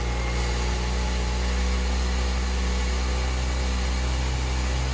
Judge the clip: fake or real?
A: real